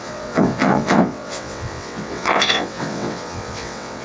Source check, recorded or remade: remade